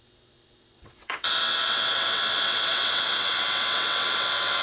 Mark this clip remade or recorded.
remade